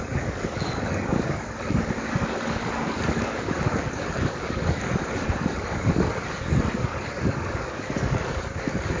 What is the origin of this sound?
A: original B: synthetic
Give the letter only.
B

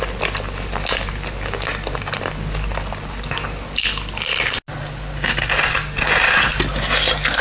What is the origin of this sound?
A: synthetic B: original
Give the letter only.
B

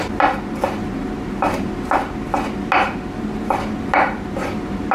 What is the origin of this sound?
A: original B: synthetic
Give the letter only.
A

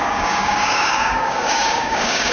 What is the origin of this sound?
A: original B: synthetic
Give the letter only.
B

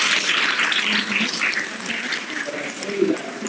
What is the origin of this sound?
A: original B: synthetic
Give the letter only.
A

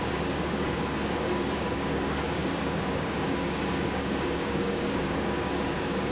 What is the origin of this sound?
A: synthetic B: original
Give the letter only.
A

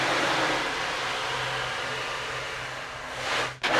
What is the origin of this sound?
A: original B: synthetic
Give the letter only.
A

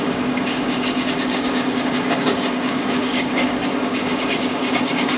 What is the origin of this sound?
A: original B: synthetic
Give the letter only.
B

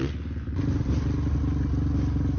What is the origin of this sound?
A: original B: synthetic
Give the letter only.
A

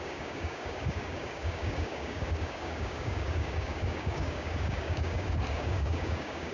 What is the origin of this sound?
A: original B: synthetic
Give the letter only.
B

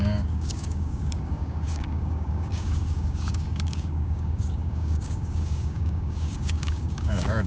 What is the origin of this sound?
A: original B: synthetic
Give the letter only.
B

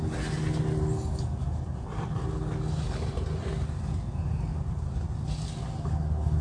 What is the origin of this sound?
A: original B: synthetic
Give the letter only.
A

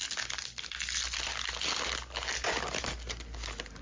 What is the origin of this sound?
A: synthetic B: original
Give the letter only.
B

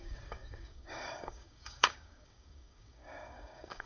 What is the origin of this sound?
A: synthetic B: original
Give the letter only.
A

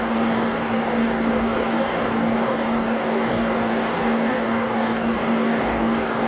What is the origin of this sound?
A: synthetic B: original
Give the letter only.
A